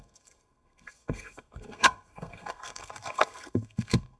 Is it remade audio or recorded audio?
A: remade